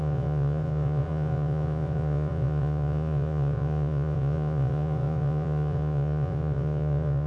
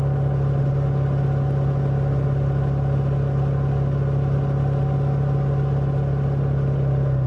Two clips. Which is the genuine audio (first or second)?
second